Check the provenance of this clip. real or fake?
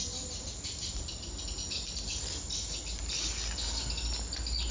real